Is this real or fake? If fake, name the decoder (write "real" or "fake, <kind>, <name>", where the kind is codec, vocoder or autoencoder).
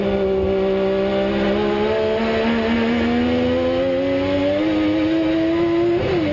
real